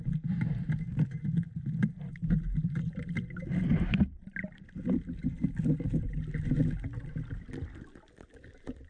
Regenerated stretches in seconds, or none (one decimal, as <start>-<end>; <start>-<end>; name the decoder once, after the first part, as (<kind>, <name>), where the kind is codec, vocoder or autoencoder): none

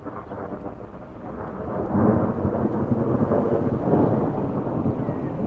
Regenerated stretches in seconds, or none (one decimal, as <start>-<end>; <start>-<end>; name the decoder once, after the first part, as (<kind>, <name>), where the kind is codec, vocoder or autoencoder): none

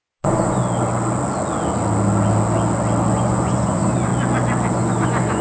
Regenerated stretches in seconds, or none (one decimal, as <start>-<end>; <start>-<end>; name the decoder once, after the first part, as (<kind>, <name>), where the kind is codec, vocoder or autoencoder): 0.0-0.6 (vocoder, Vocos); 3.1-4.1; 4.7-5.4